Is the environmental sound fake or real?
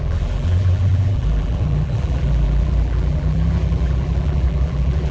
fake